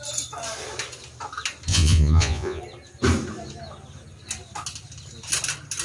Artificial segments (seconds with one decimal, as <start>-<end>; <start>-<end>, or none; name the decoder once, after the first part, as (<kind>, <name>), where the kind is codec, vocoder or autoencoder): 1.7-2.6 (vocoder, Vocos)